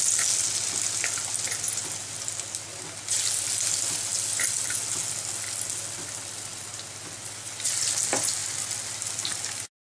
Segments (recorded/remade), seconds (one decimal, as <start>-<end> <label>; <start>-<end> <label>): 0.0-9.9 recorded